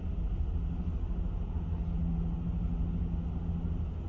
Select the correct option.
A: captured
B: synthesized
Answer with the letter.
A